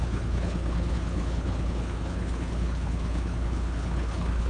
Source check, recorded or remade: remade